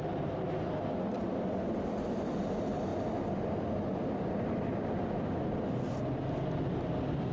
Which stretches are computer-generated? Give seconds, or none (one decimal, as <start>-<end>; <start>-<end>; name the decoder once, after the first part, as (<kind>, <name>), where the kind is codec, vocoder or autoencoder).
none